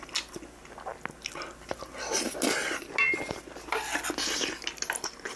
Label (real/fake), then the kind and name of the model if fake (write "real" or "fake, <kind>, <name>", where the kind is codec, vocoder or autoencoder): real